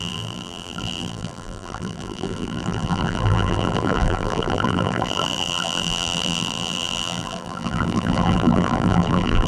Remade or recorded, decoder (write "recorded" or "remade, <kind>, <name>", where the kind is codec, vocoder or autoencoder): remade, vocoder, BigVGAN v2